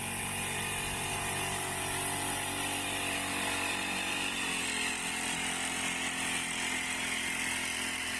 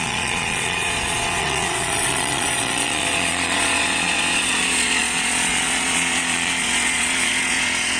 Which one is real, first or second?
first